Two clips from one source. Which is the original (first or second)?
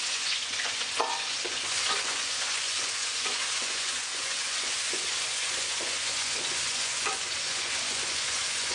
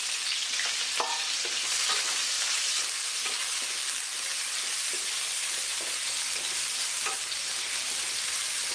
second